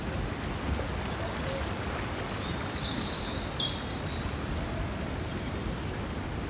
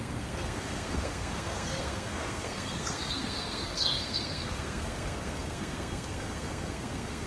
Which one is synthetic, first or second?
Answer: second